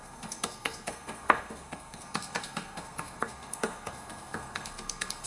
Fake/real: fake